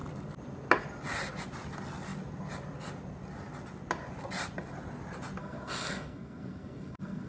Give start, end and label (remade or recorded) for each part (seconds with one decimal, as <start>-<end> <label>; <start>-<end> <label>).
0.0-5.4 recorded; 5.4-7.3 remade